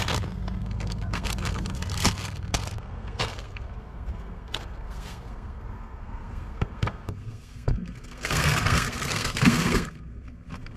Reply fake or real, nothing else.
fake